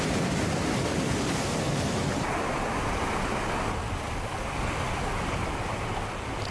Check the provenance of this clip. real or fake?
real